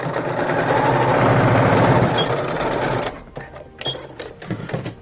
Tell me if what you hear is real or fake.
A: real